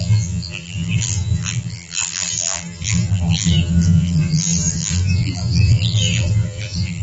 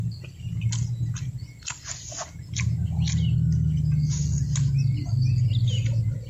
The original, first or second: second